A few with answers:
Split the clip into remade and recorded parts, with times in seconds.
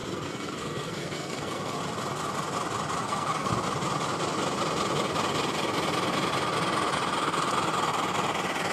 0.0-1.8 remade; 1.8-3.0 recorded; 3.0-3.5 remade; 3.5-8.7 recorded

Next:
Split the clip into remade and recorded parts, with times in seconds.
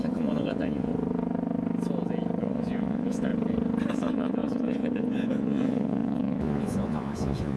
0.0-0.9 remade; 0.9-2.4 recorded; 2.4-3.3 remade; 3.3-3.9 recorded; 3.9-7.6 remade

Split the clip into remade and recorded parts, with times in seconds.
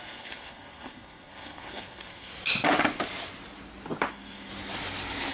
0.0-2.3 remade; 2.3-4.1 recorded; 4.1-4.5 remade; 4.5-5.3 recorded